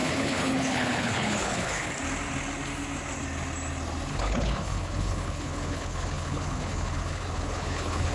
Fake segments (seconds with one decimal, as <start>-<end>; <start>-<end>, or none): 0.0-1.9; 4.1-8.1